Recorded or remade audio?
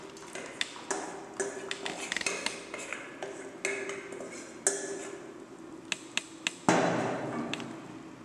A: recorded